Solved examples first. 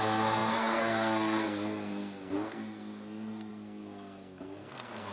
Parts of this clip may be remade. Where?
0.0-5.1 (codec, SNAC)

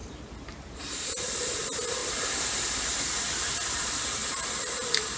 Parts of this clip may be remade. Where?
0.0-2.0 (vocoder, BigVGAN v2); 3.3-5.2

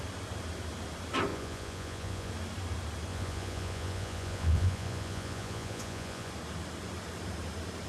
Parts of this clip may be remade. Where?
1.3-2.3 (vocoder, Vocos); 3.1-6.3

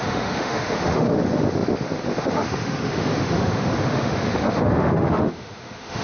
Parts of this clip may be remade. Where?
0.0-6.0 (autoencoder, DAC-VAE)

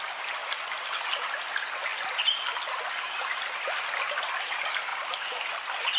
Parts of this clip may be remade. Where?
4.9-6.0 (vocoder, BigVGAN v2)

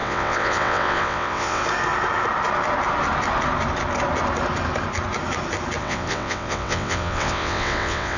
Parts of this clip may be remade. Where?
0.0-1.6 (vocoder, WaveNeXt); 5.8-8.2

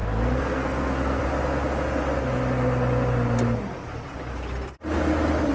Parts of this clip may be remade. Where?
0.0-1.2 (codec, SNAC)